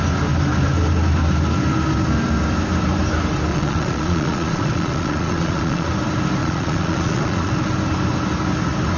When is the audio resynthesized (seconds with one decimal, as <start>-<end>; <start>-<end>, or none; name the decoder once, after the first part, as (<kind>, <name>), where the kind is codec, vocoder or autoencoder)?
3.5-5.9 (vocoder, Vocos); 6.4-7.5